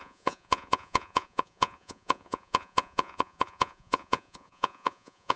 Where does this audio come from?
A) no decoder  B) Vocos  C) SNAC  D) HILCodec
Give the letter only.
B